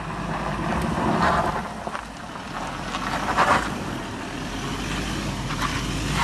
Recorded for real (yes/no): yes